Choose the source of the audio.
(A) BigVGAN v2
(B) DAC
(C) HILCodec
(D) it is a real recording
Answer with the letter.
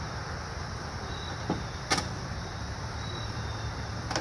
D